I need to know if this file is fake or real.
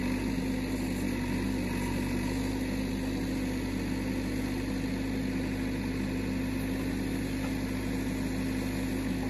real